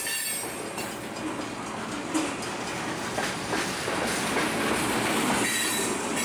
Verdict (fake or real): real